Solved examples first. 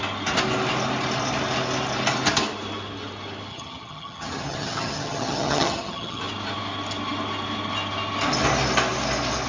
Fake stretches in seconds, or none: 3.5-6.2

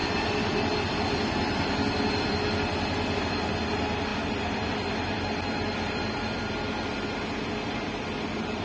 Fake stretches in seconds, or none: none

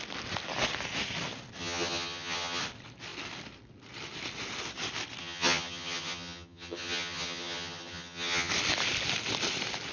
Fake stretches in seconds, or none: 1.6-2.6; 5.2-8.5

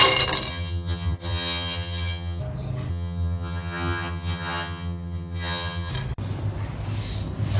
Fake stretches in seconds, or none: 0.5-2.4; 2.9-5.9

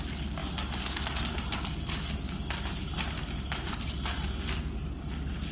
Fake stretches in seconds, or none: none

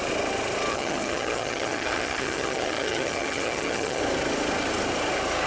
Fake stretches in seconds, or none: 0.7-4.0